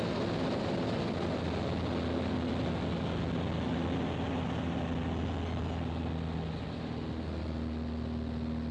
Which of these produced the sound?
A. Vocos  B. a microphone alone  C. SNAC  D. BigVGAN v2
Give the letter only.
B